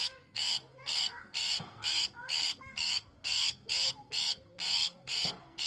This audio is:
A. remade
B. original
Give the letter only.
A